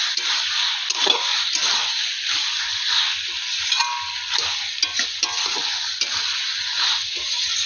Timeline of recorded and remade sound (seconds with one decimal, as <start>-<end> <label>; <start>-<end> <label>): 0.0-6.2 recorded; 6.2-7.7 remade